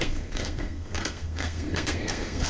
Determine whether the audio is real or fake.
fake